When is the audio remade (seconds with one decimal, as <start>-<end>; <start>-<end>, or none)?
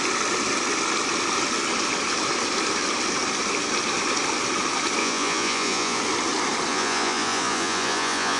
5.0-6.0; 6.7-8.4